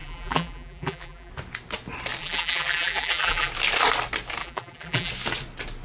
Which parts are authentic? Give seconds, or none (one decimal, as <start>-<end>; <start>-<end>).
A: 1.3-2.2; 3.5-4.4; 5.1-5.8